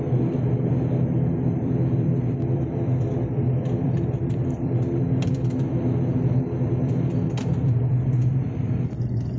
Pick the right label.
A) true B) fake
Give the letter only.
B